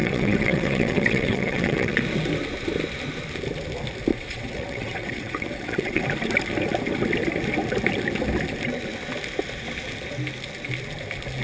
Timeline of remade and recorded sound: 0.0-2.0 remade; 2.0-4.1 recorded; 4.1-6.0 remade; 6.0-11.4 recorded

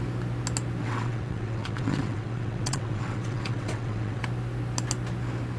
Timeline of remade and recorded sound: 0.0-0.8 recorded; 0.8-4.2 remade; 4.2-5.6 recorded

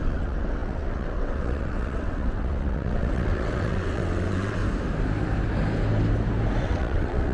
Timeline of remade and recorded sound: 0.0-4.6 remade; 4.6-6.6 recorded; 6.6-7.3 remade

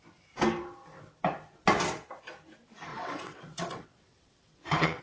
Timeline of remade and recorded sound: 0.0-2.9 recorded; 2.9-5.0 remade

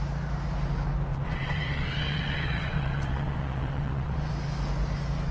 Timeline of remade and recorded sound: 0.0-1.1 recorded; 1.1-4.3 remade; 4.3-5.3 recorded